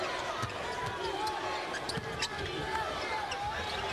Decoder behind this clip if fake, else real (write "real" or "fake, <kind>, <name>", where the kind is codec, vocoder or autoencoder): real